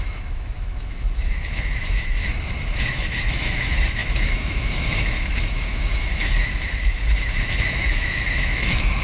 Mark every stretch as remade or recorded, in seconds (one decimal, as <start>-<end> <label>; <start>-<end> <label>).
0.0-2.2 remade; 2.2-2.8 recorded; 2.8-9.0 remade